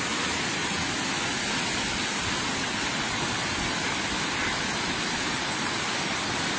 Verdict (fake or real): real